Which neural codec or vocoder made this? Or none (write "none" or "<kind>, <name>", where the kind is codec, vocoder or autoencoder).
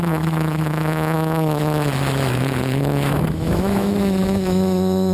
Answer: autoencoder, DAC-VAE